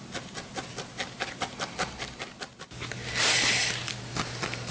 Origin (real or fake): real